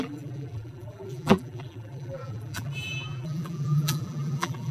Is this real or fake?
fake